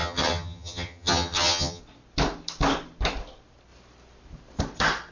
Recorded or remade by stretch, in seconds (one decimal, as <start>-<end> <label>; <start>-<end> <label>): 0.0-1.8 remade; 1.8-5.1 recorded